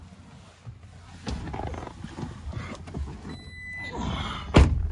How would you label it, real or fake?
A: real